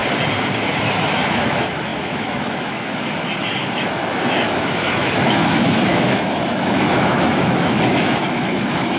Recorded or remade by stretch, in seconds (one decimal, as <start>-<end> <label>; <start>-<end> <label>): 0.0-0.6 recorded; 0.6-9.0 remade

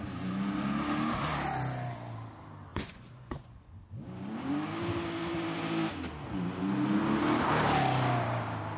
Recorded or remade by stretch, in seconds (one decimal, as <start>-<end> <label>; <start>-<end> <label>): 0.0-2.7 recorded; 2.7-3.7 remade; 3.7-8.8 recorded